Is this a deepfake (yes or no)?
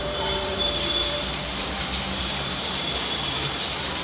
yes